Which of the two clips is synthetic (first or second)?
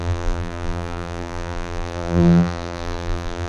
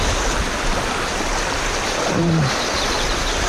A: first